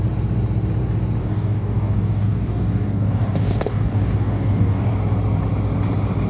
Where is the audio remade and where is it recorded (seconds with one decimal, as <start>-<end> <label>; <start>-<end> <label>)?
0.0-1.2 recorded; 1.2-4.9 remade; 4.9-6.3 recorded